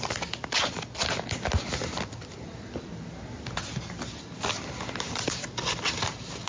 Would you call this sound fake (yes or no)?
no